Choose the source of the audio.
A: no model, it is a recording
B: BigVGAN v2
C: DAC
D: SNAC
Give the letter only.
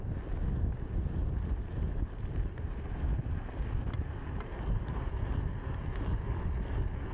A